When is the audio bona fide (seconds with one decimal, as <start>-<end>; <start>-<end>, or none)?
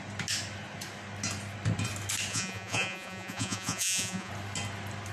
0.0-2.3; 4.3-5.1